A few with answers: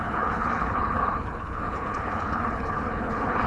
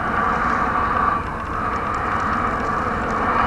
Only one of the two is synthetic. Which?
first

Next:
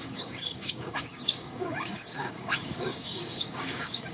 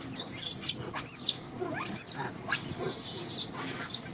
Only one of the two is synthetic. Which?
first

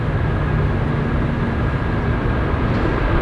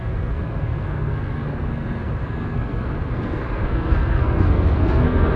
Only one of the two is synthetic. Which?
second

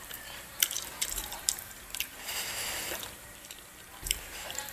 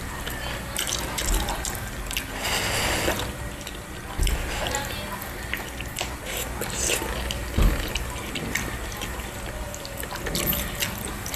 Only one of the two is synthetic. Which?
first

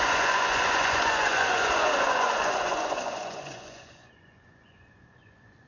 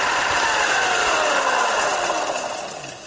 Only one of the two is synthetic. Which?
first